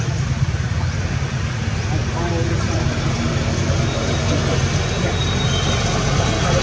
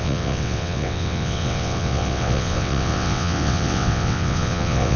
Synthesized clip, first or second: second